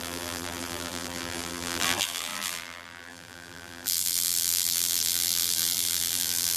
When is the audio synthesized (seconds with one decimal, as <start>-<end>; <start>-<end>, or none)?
0.0-6.6